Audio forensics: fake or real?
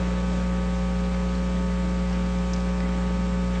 real